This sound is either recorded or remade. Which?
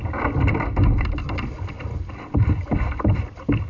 recorded